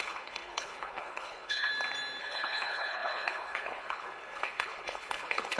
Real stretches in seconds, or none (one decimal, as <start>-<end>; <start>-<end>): 1.7-2.2